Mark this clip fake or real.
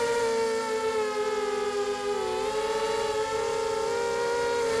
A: real